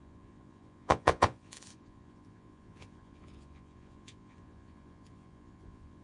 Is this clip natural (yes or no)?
no